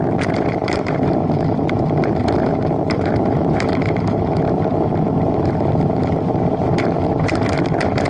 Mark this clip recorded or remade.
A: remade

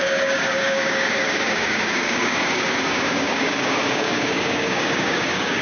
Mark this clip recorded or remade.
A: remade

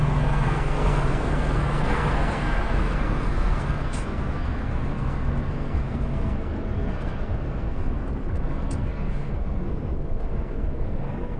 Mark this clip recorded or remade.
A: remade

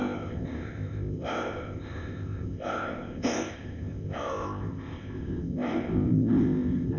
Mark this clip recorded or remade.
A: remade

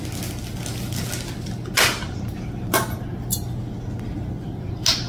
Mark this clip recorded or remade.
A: recorded